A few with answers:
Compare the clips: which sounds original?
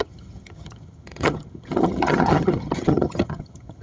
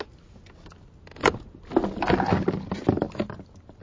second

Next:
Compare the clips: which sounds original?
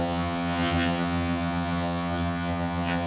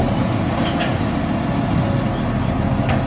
second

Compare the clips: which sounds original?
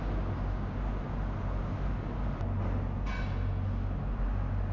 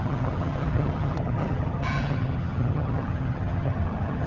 first